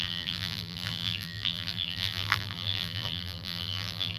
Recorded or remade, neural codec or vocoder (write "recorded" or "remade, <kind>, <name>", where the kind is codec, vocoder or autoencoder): remade, vocoder, BigVGAN v2